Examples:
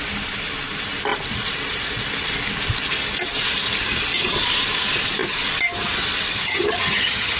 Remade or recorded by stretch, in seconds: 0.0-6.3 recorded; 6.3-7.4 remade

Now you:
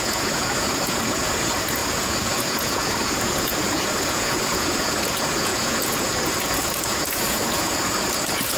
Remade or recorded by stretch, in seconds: 0.0-8.6 remade

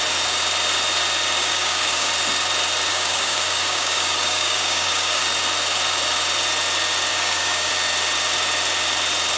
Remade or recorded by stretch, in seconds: 0.0-1.4 recorded; 1.4-2.1 remade; 2.1-2.9 recorded; 2.9-5.2 remade; 5.2-7.1 recorded; 7.1-7.7 remade; 7.7-9.4 recorded

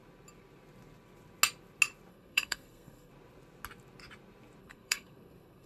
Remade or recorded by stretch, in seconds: 0.0-2.1 recorded; 2.1-3.1 remade; 3.1-4.6 recorded; 4.6-5.7 remade

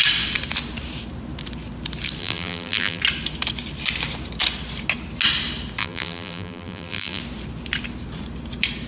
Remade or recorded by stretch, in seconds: 0.0-2.2 recorded; 2.2-3.0 remade; 3.0-5.8 recorded; 5.8-7.2 remade; 7.2-8.9 recorded

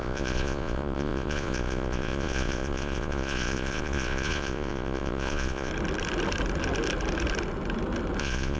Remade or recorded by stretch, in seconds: 0.0-5.7 remade; 5.7-8.2 recorded; 8.2-8.6 remade